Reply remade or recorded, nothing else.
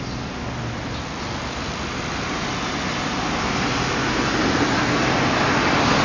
recorded